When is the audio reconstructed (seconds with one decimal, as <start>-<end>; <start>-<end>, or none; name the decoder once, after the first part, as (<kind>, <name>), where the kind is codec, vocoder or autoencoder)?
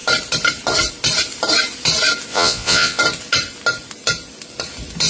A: 2.3-3.0 (vocoder, Vocos)